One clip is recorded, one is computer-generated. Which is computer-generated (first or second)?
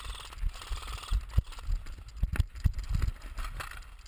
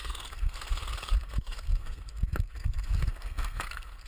second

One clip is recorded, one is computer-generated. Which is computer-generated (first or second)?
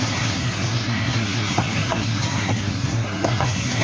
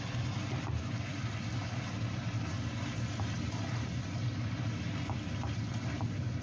first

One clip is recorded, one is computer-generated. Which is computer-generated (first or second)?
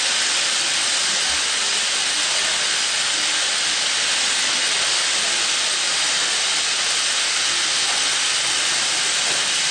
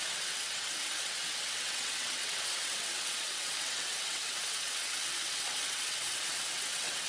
second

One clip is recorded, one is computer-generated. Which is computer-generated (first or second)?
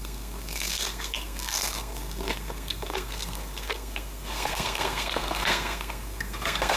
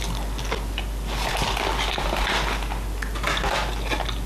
first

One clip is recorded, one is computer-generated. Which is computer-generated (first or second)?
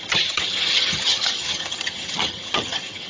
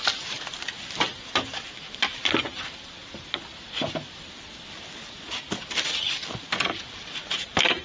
first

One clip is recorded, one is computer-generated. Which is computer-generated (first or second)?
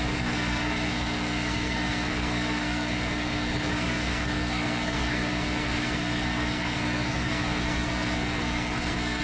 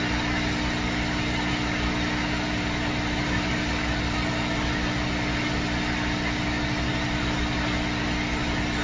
first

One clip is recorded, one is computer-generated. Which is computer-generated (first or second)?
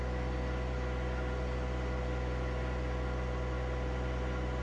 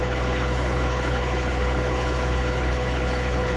second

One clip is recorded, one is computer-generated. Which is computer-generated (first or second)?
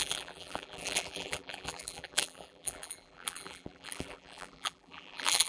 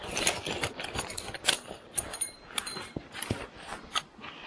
first